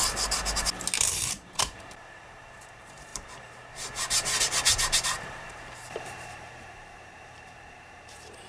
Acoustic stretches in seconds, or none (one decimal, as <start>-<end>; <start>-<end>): 0.0-1.0